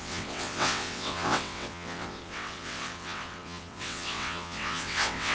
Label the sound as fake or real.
fake